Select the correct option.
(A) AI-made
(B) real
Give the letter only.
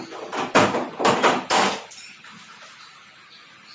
B